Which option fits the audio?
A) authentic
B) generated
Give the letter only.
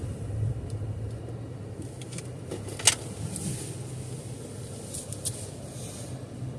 A